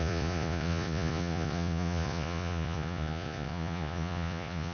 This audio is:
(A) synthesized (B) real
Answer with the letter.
A